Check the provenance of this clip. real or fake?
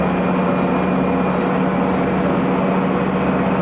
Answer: real